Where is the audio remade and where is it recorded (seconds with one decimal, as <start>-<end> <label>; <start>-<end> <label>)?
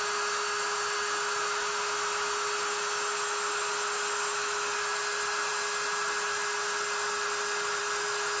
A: 0.0-8.4 recorded